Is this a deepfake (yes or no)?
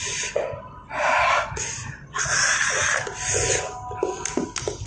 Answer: no